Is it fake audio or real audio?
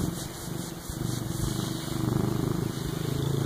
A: real